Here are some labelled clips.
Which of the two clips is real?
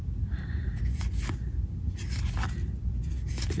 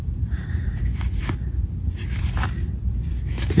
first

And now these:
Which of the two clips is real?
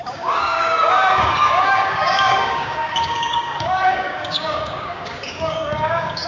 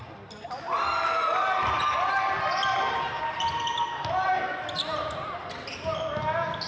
second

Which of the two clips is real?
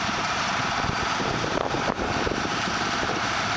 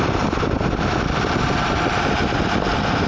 second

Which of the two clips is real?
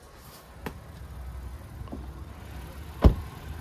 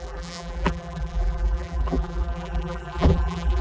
first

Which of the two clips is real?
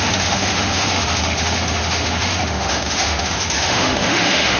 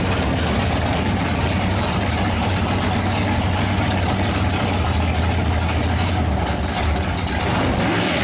second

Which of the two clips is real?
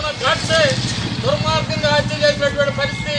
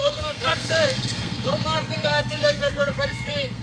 first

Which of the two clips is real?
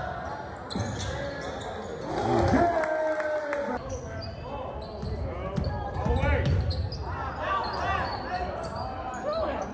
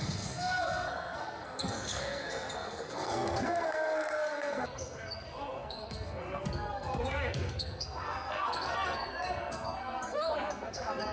first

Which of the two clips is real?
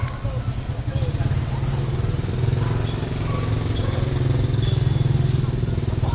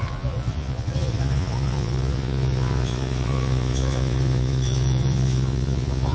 first